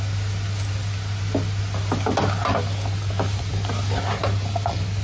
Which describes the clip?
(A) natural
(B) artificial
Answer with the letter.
A